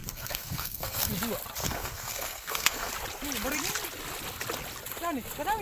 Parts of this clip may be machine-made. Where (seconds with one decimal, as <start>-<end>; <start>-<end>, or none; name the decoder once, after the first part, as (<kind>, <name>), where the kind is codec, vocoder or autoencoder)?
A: 0.0-1.1 (codec, SNAC); 1.6-2.9